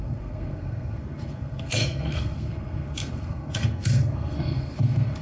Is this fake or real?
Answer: fake